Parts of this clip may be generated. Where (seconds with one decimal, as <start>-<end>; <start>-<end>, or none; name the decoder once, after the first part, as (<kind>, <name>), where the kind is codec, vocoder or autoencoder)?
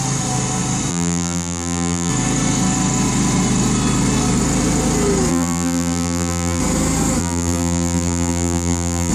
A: 0.9-2.1 (vocoder, BigVGAN v2); 5.3-6.6; 7.2-9.1